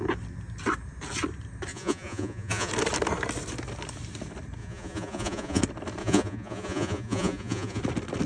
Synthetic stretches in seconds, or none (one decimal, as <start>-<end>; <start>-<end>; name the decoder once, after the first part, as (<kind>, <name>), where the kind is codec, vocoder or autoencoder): 1.7-2.7 (vocoder, Vocos); 4.6-5.6; 6.0-7.8